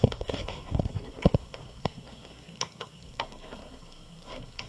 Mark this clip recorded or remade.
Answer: remade